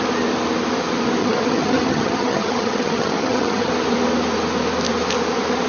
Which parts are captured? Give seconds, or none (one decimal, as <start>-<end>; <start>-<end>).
0.0-1.2; 3.7-5.7